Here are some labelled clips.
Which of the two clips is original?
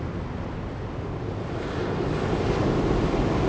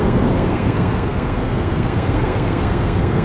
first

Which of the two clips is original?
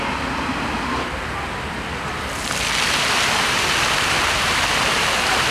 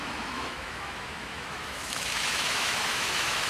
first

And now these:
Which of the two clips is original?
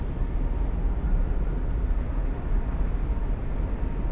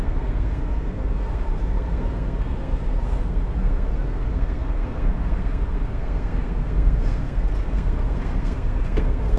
first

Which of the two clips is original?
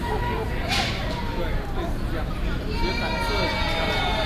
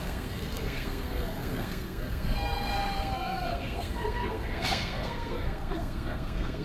first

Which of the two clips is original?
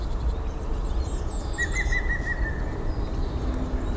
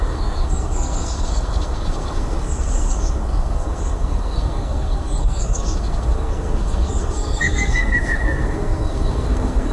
first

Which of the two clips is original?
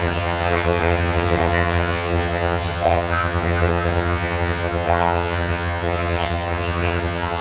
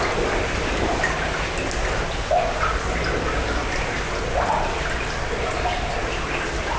second